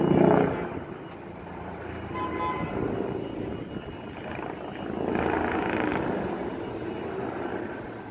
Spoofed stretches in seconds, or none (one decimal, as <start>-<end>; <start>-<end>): none